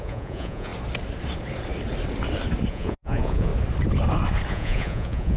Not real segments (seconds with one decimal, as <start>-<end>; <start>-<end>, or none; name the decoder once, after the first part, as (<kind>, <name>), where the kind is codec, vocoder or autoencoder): 0.0-0.7 (vocoder, Vocos); 2.7-3.5; 4.5-5.4